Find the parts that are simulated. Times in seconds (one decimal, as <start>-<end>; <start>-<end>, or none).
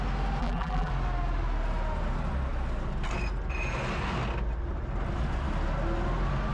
0.4-0.9